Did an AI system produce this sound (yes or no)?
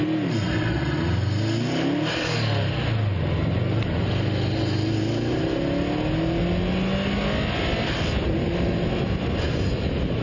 no